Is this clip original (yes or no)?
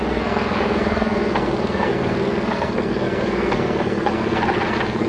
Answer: no